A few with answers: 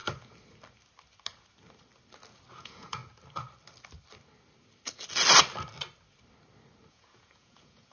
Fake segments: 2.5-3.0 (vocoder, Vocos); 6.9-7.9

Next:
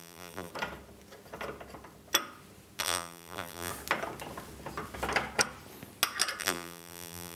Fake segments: 0.0-0.5 (vocoder, BigVGAN v2); 2.8-3.7; 6.4-7.4

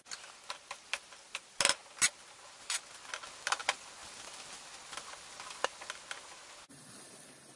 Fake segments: none

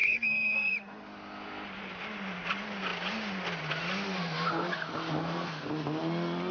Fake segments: 0.0-0.7 (codec, SNAC); 5.2-5.7

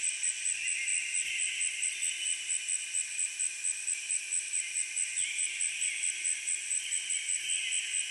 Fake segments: none